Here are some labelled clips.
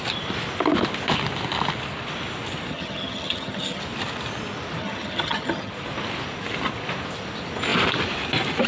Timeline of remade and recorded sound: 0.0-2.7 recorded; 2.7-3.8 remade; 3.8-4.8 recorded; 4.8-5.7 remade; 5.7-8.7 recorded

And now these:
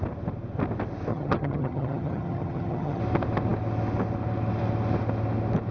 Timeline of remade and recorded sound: 0.0-1.1 recorded; 1.1-3.0 remade; 3.0-5.7 recorded